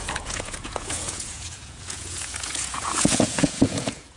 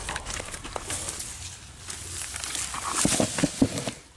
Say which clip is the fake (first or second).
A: first